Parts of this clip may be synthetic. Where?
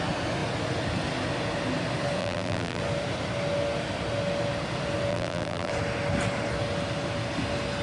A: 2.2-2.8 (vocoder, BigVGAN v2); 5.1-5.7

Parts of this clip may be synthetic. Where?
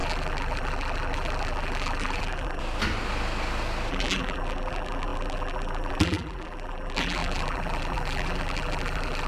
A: 0.0-2.6 (vocoder, BigVGAN v2); 3.9-9.3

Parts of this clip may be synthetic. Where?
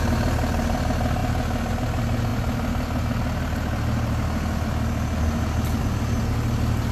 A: none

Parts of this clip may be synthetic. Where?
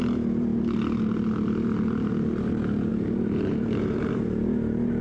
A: 2.9-5.0 (vocoder, BigVGAN v2)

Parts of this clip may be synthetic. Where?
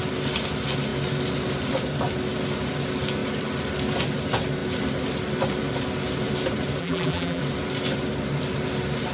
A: 6.8-7.4 (vocoder, BigVGAN v2)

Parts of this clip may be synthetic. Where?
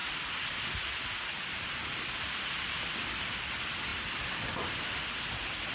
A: none